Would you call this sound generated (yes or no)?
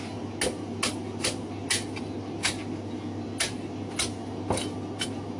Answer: no